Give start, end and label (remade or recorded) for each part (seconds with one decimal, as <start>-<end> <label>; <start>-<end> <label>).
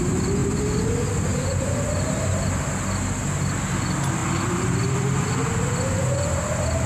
0.0-6.9 recorded